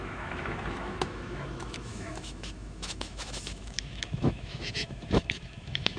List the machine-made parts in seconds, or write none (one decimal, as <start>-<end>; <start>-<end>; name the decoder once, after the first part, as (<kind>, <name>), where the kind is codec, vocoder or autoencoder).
0.0-6.0 (autoencoder, DAC-VAE)